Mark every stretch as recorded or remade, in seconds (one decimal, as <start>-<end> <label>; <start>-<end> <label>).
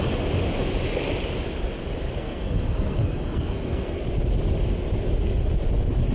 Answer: 0.0-2.2 recorded; 2.2-4.0 remade; 4.0-6.1 recorded